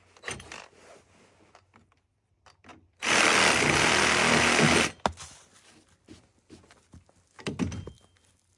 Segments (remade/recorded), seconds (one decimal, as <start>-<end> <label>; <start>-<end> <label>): 0.0-8.6 recorded